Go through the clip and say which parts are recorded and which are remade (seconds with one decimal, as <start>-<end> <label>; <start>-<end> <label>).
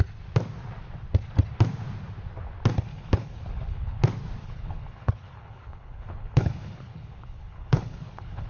0.0-2.9 recorded; 2.9-4.0 remade; 4.0-4.4 recorded; 4.4-8.5 remade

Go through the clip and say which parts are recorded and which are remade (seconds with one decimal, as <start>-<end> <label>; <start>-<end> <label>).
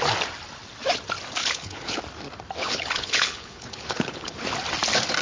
0.0-1.4 recorded; 1.4-2.0 remade; 2.0-2.6 recorded; 2.6-4.3 remade; 4.3-5.2 recorded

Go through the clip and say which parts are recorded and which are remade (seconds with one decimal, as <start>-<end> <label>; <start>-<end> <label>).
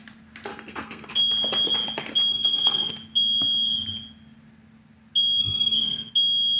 0.0-0.5 recorded; 0.5-1.1 remade; 1.1-2.3 recorded; 2.3-2.9 remade; 2.9-5.4 recorded; 5.4-6.1 remade; 6.1-6.6 recorded